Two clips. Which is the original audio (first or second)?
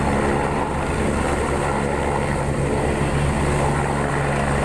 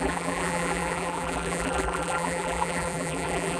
first